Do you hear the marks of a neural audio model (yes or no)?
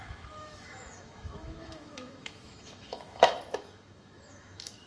yes